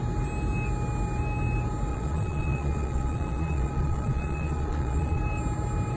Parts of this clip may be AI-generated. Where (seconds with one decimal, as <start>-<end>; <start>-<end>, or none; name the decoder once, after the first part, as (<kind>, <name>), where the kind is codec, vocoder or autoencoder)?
1.9-5.2 (vocoder, Vocos)